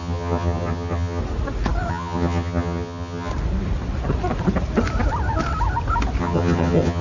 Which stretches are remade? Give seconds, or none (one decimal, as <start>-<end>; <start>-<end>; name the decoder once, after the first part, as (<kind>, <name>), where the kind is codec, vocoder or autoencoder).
0.0-1.2 (vocoder, HiFi-GAN); 1.9-3.3; 6.2-7.0